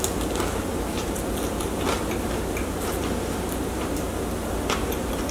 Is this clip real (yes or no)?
yes